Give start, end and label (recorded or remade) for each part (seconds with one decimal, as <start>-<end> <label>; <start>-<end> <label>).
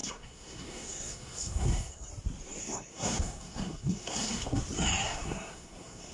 0.0-2.1 remade; 2.1-2.6 recorded; 2.6-4.6 remade; 4.6-5.0 recorded; 5.0-6.1 remade